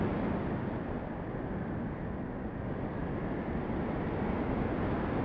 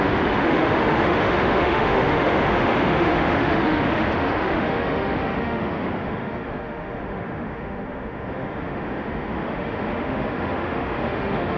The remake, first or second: second